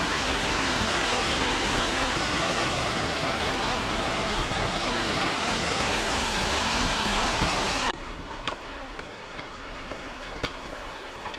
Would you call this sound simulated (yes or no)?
yes